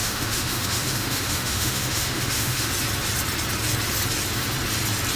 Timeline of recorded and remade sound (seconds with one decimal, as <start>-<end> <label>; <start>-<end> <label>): 0.0-2.7 remade; 2.7-5.2 recorded